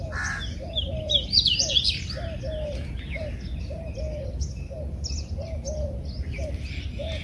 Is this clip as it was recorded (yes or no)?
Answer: yes